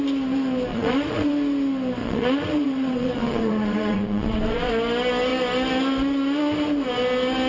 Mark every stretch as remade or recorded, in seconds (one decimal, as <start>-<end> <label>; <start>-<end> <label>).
0.0-0.7 recorded; 0.7-1.3 remade; 1.3-2.0 recorded; 2.0-4.7 remade; 4.7-7.5 recorded